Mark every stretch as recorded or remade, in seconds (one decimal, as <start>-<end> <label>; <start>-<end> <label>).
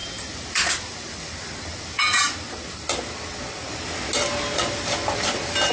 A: 0.0-5.7 recorded